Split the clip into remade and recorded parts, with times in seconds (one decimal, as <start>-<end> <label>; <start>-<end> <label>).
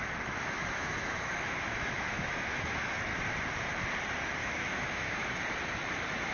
0.0-3.0 remade; 3.0-4.4 recorded; 4.4-5.4 remade; 5.4-6.3 recorded